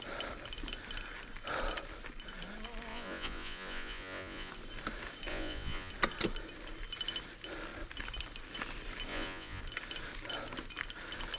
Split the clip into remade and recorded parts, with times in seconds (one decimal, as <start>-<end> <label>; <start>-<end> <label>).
0.0-2.9 recorded; 2.9-4.5 remade; 4.5-5.3 recorded; 5.3-5.9 remade; 5.9-9.1 recorded; 9.1-9.6 remade; 9.6-11.4 recorded

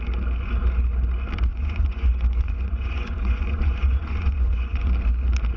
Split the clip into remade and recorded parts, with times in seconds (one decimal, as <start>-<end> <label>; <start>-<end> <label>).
0.0-1.5 recorded; 1.5-4.9 remade; 4.9-5.6 recorded

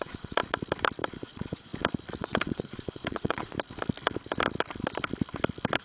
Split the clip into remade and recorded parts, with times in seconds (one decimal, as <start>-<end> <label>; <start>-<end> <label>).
0.0-0.4 remade; 0.4-1.1 recorded; 1.1-1.7 remade; 1.7-2.2 recorded; 2.2-3.5 remade; 3.5-5.8 recorded